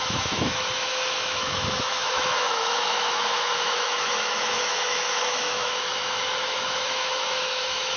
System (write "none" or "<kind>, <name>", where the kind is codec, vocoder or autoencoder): autoencoder, DAC-VAE